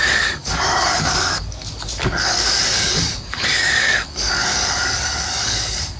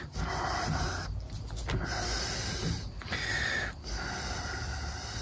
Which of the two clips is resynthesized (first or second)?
first